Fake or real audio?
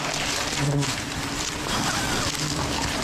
real